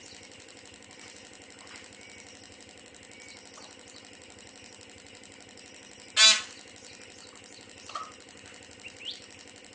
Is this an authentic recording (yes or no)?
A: yes